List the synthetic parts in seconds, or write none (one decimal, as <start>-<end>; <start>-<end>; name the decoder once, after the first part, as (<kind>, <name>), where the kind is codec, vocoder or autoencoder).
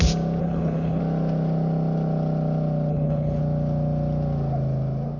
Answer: 0.4-1.0 (codec, HILCodec); 2.9-3.4